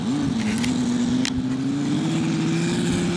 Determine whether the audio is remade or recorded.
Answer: recorded